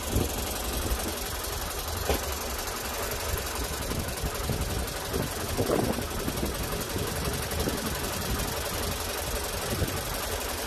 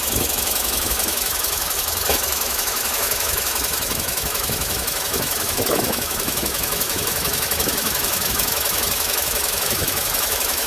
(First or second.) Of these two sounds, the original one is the first